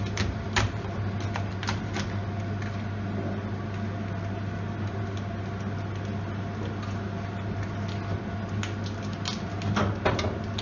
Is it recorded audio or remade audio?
recorded